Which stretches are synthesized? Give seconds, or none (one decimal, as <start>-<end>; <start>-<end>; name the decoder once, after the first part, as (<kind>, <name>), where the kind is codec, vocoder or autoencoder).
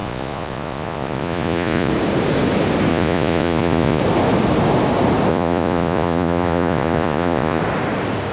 0.0-1.9 (vocoder, Vocos); 2.9-4.0; 5.3-7.6